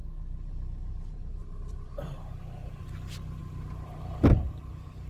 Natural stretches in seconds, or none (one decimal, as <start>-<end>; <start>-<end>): 2.4-3.4